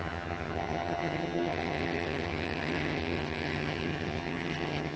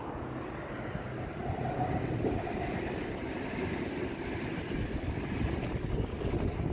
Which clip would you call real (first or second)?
second